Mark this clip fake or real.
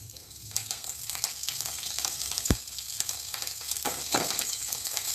fake